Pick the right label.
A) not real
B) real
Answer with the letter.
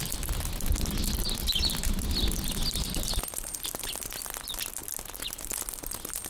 B